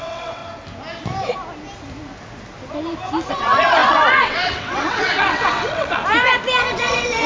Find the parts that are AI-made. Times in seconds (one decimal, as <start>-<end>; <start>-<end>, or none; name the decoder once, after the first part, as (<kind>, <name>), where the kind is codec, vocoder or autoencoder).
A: 0.0-0.4 (vocoder, WaveNeXt); 3.3-6.0; 6.7-7.3

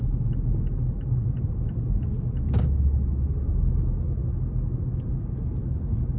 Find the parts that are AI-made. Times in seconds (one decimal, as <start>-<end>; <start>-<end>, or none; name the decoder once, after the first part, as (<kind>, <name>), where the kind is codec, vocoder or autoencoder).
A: none

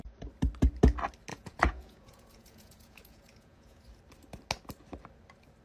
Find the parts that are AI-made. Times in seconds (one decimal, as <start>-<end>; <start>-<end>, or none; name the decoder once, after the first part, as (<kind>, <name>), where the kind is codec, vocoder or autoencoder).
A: 1.3-3.8 (vocoder, Vocos)

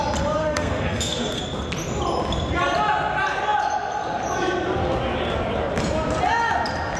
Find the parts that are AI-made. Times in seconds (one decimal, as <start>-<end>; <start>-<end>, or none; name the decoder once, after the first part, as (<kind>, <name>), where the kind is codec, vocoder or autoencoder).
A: 0.4-1.4 (codec, SNAC)

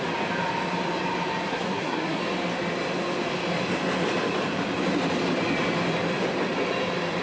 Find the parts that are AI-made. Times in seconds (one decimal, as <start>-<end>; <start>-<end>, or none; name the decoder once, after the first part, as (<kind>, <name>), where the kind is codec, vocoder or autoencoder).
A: 1.5-2.2 (codec, SNAC)

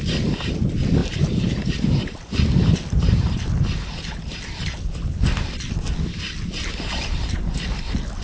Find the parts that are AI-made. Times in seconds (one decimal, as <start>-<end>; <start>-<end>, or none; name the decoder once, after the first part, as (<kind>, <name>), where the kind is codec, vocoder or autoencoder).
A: 1.0-1.7 (vocoder, BigVGAN v2)

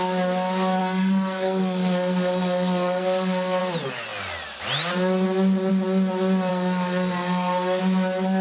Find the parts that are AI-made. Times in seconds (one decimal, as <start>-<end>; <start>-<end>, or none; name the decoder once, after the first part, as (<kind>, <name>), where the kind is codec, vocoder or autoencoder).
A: 0.8-3.6 (codec, SNAC); 6.5-7.8

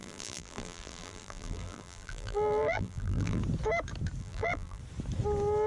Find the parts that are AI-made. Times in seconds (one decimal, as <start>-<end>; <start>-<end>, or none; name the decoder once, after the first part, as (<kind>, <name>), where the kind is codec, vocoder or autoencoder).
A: 0.0-3.4 (vocoder, BigVGAN v2); 4.2-4.8